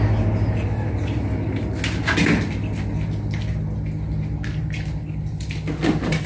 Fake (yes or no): no